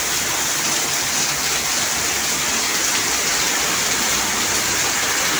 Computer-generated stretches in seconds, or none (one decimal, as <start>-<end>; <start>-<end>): none

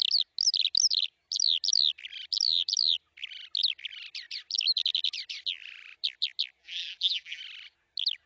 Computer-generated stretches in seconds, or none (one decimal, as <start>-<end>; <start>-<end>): 6.6-7.4